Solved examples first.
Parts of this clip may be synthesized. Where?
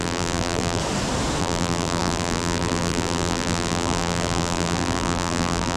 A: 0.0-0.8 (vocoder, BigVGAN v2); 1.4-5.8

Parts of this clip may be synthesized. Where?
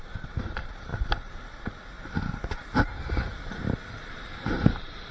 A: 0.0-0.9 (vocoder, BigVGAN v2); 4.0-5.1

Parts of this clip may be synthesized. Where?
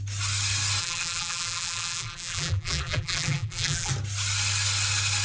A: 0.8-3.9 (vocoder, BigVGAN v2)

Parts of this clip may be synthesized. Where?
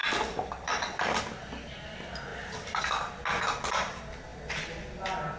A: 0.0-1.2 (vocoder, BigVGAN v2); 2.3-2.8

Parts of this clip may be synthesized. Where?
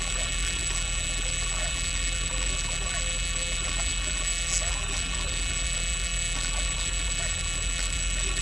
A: 0.0-8.4 (vocoder, BigVGAN v2)